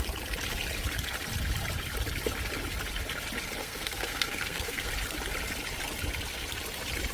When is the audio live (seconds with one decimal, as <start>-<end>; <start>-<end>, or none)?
0.0-3.6; 4.9-7.1

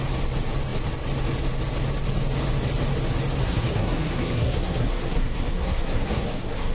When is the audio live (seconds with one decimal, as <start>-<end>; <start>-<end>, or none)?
0.0-3.4

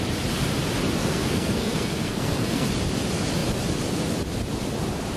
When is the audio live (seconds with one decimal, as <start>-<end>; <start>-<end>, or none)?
0.0-1.0; 2.7-5.2

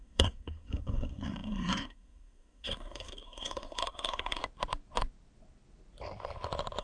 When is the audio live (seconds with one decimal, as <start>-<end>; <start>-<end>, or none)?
4.4-6.8

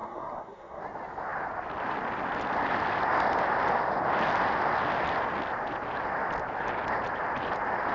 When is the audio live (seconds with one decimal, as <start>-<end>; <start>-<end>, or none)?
0.8-7.9

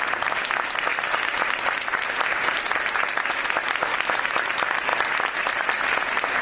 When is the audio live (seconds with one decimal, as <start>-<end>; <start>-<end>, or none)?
0.0-6.4